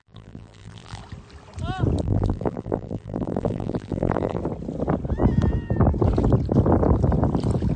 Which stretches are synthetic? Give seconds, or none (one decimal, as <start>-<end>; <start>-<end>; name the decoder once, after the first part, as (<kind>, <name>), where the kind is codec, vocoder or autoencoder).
0.0-1.0 (vocoder, BigVGAN v2); 2.0-4.4